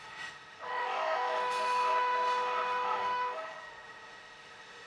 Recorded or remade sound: remade